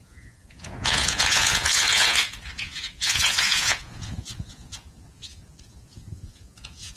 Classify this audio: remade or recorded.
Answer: remade